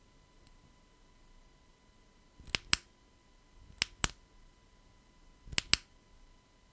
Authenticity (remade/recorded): recorded